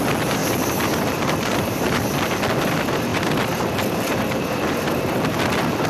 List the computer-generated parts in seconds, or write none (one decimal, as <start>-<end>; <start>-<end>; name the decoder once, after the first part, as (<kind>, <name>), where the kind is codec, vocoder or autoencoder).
0.4-2.4 (vocoder, BigVGAN v2); 3.1-5.9